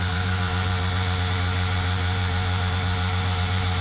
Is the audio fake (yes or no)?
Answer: yes